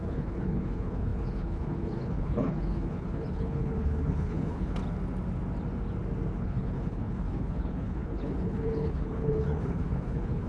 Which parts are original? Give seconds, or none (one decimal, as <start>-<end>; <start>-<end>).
4.8-6.4